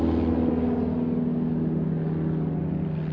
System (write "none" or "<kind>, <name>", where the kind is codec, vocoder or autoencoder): none